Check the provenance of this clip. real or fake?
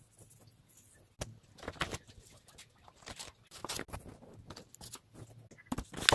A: real